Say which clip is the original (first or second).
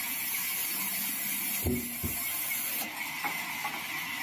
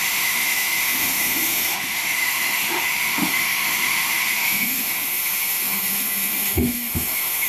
first